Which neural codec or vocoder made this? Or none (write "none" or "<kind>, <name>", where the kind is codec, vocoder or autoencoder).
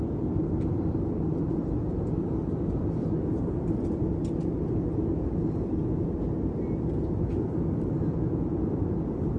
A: none